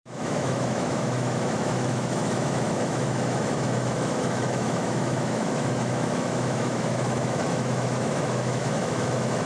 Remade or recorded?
remade